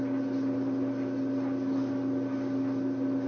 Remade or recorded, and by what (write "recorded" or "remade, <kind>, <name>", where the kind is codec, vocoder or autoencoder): recorded